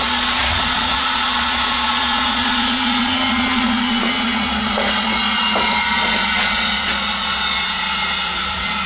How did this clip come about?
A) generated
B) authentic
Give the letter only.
A